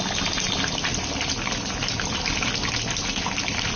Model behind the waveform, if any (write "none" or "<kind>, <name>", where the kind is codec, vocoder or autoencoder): none